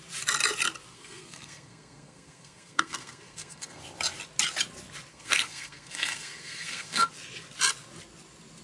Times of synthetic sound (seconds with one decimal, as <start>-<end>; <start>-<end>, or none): 0.9-3.8; 5.1-7.1